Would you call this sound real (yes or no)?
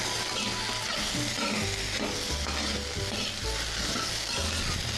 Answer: yes